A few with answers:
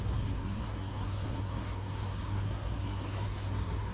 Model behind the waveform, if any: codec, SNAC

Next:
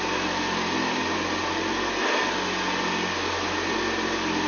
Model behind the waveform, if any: none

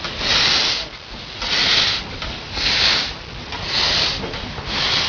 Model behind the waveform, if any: none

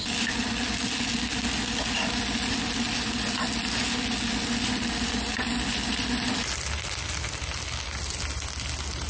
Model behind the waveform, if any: none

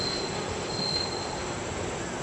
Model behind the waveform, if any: none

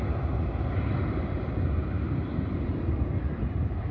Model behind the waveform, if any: vocoder, BigVGAN v2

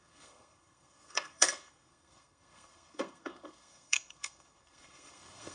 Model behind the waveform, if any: codec, SNAC